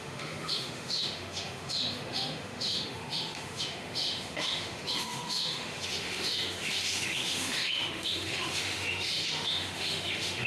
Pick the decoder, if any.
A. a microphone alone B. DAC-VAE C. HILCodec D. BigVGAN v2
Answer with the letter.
B